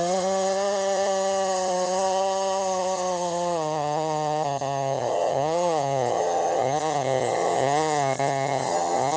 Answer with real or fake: fake